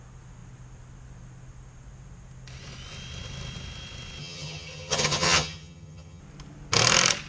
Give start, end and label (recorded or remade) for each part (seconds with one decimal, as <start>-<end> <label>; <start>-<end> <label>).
0.0-4.2 recorded; 4.2-6.2 remade; 6.2-7.3 recorded